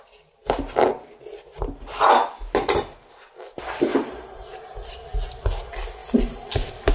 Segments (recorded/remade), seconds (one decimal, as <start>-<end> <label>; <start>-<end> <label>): 0.0-3.9 recorded; 3.9-4.6 remade; 4.6-6.9 recorded